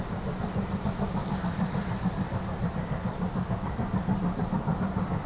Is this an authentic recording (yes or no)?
yes